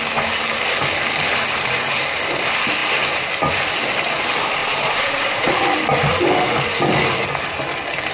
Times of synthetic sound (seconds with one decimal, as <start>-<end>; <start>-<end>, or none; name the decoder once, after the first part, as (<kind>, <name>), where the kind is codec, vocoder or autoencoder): 4.6-5.5 (vocoder, Vocos)